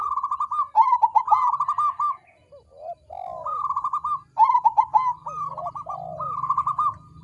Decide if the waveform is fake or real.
real